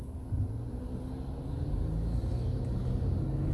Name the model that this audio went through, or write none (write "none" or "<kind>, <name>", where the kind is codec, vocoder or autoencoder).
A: none